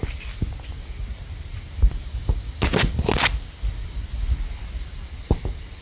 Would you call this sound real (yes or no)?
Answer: yes